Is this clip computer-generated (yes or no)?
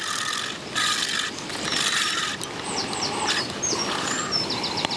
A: no